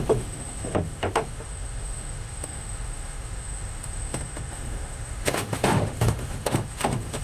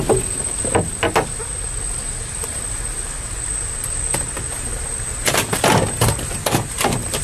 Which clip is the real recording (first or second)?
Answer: second